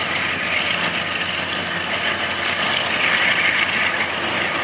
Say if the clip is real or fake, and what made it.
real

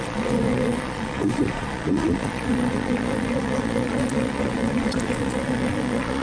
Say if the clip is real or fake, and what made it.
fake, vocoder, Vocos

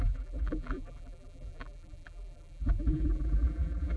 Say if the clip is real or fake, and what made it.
fake, vocoder, BigVGAN v2